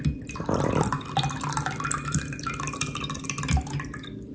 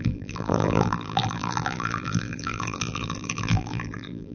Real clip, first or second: first